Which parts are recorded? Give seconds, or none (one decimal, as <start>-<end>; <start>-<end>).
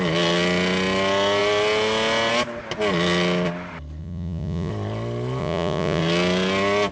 0.0-4.0; 4.7-5.4; 6.0-6.9